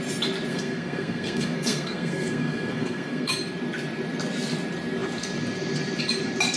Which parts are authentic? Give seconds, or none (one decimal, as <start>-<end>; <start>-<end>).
0.0-0.5; 3.3-6.6